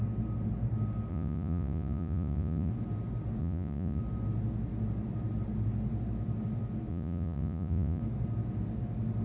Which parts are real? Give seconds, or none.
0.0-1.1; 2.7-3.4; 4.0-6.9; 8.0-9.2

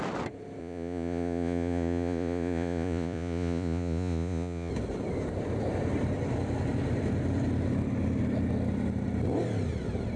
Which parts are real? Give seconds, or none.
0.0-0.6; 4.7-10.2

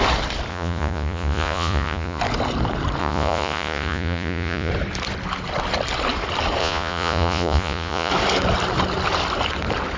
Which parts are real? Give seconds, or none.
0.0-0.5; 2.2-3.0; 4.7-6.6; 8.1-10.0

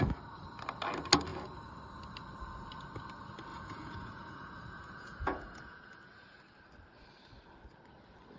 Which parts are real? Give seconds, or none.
0.0-3.5; 6.4-8.4

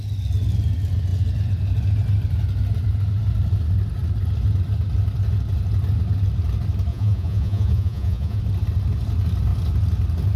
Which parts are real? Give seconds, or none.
0.0-6.9; 8.4-10.4

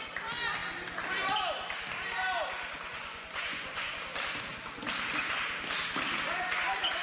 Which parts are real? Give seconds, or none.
0.0-2.9; 4.0-7.0

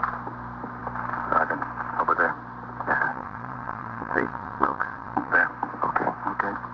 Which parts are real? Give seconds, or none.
0.0-3.1; 5.3-6.7

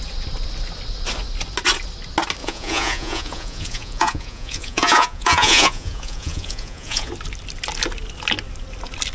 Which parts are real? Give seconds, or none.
0.0-2.4; 7.1-9.1